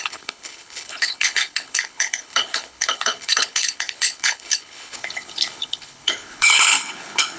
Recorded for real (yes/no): no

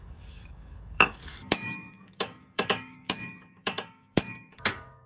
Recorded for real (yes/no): no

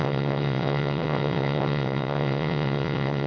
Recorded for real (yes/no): no